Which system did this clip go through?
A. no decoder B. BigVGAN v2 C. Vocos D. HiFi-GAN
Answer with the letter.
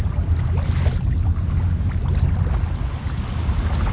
A